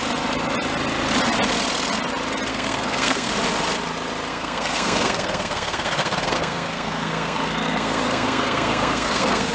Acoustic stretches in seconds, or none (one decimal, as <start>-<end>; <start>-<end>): 0.0-2.5; 3.3-4.3